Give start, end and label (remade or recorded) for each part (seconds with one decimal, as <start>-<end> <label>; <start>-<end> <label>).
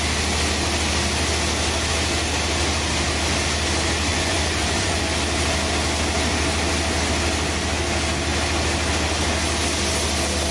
0.0-4.1 recorded; 4.1-5.0 remade; 5.0-10.5 recorded